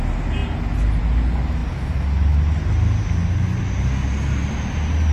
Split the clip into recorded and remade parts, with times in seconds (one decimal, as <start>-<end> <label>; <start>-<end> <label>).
0.0-5.1 recorded